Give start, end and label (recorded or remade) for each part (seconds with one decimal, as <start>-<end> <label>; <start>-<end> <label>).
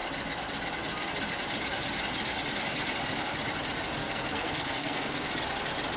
0.0-4.0 recorded; 4.0-5.3 remade; 5.3-6.0 recorded